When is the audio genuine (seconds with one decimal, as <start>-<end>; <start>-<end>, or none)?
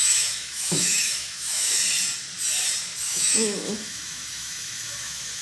1.8-3.1